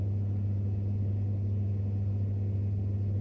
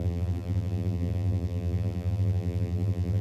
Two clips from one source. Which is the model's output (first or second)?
second